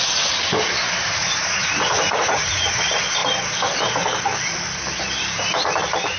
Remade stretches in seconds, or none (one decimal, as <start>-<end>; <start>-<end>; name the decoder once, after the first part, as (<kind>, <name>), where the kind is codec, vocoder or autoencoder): 1.2-2.7 (vocoder, Vocos)